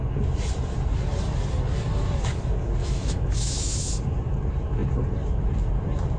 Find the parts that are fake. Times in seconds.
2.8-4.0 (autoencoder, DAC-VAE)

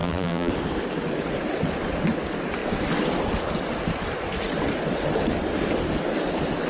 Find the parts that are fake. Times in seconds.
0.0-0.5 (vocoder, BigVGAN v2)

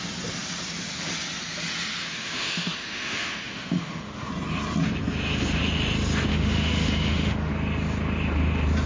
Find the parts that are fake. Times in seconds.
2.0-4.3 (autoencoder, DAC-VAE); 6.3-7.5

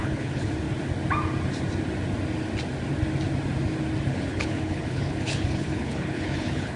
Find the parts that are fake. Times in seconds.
0.0-0.5 (codec, HILCodec); 4.1-6.8

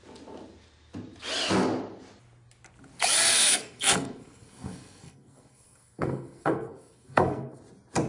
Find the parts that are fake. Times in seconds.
3.3-7.6 (codec, SNAC)